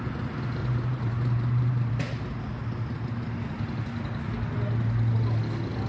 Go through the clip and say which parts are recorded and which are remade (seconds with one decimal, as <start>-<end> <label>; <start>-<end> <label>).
0.0-0.6 recorded; 0.6-1.9 remade; 1.9-5.9 recorded